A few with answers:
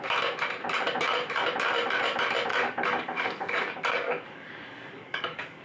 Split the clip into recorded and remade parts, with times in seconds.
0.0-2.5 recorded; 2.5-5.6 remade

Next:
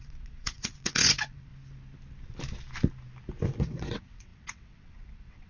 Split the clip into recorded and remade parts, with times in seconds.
0.0-1.5 remade; 1.5-3.6 recorded; 3.6-5.5 remade

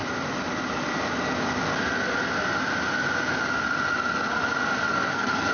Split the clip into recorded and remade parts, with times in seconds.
0.0-4.9 recorded; 4.9-5.5 remade

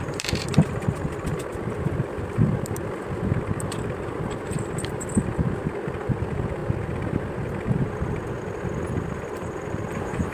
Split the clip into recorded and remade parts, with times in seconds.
0.0-10.3 remade

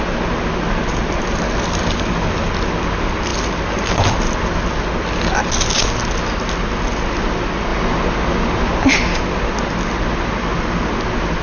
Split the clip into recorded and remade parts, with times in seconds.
0.0-11.4 recorded

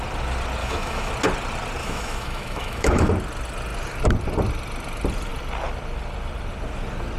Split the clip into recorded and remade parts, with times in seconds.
0.0-0.6 recorded; 0.6-1.1 remade; 1.1-1.8 recorded; 1.8-3.1 remade; 3.1-7.2 recorded

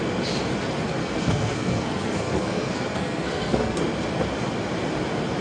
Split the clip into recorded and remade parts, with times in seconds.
0.0-1.0 recorded; 1.0-3.8 remade; 3.8-5.4 recorded

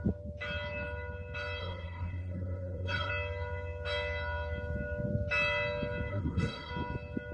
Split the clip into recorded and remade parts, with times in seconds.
0.0-1.6 recorded; 1.6-3.1 remade; 3.1-6.1 recorded; 6.1-6.7 remade; 6.7-7.3 recorded